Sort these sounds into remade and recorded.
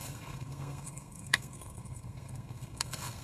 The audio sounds remade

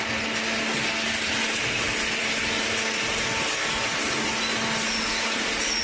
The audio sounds recorded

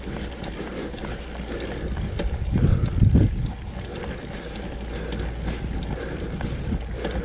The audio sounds recorded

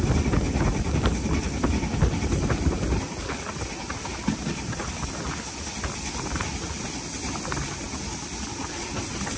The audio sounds recorded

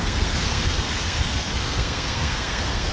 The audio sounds remade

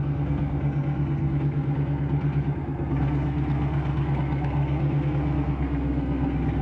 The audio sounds remade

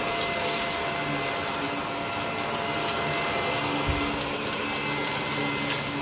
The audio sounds recorded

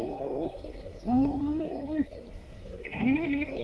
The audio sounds remade